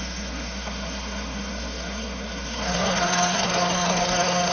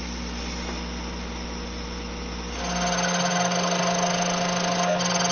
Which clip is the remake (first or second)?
first